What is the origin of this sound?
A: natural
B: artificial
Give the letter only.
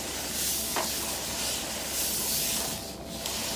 A